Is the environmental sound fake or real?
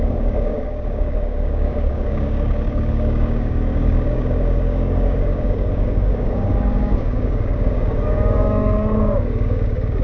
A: fake